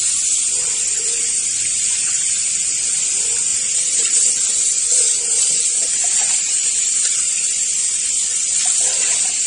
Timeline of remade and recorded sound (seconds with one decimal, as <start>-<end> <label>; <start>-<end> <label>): 0.0-3.5 recorded; 3.5-4.3 remade; 4.3-5.1 recorded; 5.1-8.2 remade; 8.2-9.5 recorded